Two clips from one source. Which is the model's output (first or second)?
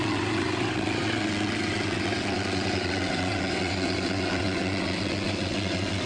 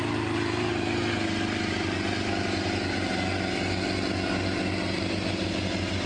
first